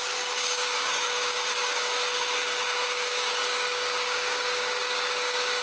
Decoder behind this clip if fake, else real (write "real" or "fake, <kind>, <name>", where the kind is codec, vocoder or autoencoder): fake, codec, DAC